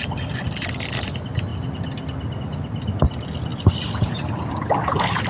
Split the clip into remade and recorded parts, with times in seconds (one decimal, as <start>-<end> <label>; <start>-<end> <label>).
0.0-3.5 recorded; 3.5-5.3 remade